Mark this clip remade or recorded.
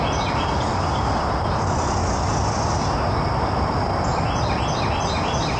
recorded